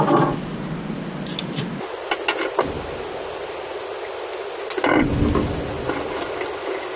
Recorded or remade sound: recorded